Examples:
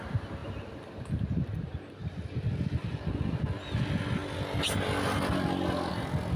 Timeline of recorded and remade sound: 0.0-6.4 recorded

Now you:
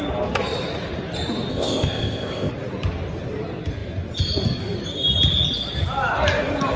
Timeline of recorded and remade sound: 0.0-1.5 recorded; 1.5-2.5 remade; 2.5-6.8 recorded

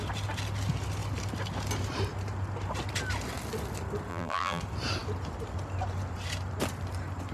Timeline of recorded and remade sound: 0.0-4.1 recorded; 4.1-4.6 remade; 4.6-7.3 recorded